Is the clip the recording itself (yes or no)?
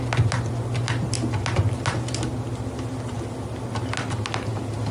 yes